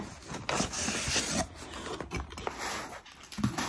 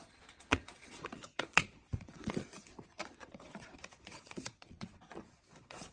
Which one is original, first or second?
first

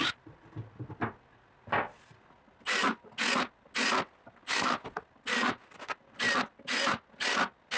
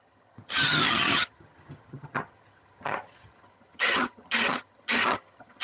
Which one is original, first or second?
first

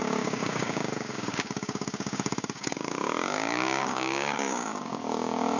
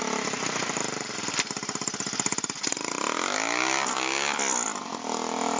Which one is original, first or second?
second